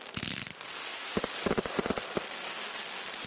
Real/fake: real